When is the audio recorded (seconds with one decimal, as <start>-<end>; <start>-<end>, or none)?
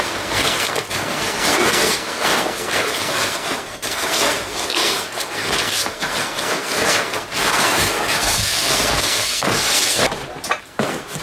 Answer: 10.0-10.6